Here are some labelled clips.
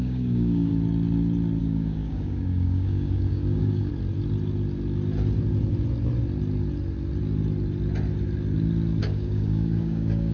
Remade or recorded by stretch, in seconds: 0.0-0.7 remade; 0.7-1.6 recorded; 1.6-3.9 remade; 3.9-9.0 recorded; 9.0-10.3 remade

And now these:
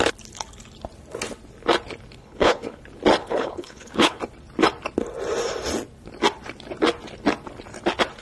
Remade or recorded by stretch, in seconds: 0.0-2.2 recorded; 2.2-2.8 remade; 2.8-3.2 recorded; 3.2-4.2 remade; 4.2-8.2 recorded

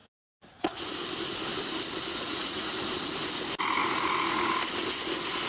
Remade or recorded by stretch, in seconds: 0.0-0.8 remade; 0.8-2.1 recorded; 2.1-2.8 remade; 2.8-3.8 recorded; 3.8-4.5 remade; 4.5-5.5 recorded

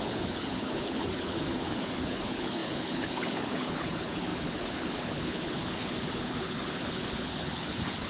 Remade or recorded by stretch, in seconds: 0.0-8.1 remade

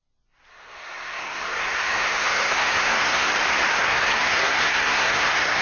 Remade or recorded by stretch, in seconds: 0.0-0.5 recorded; 0.5-3.3 remade; 3.3-3.7 recorded; 3.7-5.6 remade

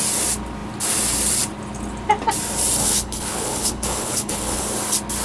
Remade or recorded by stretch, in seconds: 0.0-2.8 recorded; 2.8-4.6 remade; 4.6-5.2 recorded

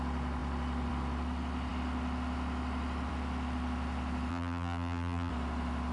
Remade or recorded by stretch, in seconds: 0.0-4.3 recorded; 4.3-5.3 remade; 5.3-5.9 recorded